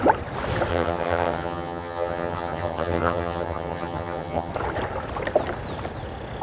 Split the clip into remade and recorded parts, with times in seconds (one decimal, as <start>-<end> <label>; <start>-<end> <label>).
0.0-0.7 recorded; 0.7-4.5 remade; 4.5-6.4 recorded